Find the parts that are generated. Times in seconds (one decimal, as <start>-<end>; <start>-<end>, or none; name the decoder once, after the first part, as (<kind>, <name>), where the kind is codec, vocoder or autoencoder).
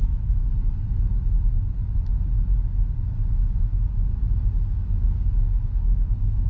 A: 0.0-0.4 (codec, DAC); 4.3-6.5